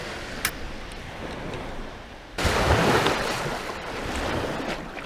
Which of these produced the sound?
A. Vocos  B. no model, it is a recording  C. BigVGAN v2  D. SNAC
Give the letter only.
B